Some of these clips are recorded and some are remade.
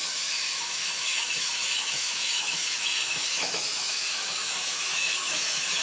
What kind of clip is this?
remade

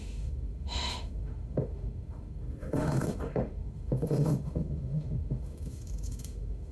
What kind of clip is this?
remade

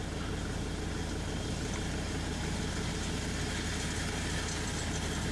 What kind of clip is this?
recorded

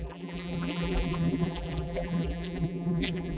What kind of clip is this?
remade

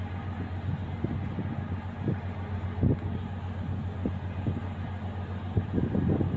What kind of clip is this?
recorded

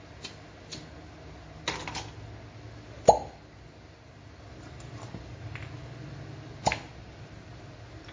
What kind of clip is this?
recorded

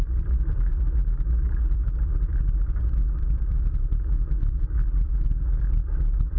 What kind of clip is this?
remade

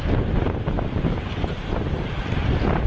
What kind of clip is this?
recorded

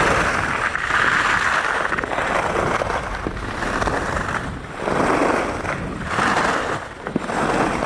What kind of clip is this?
recorded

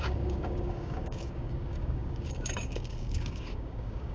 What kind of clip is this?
remade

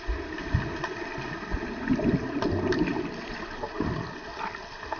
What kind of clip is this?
recorded